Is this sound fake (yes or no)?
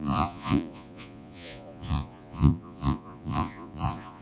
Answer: yes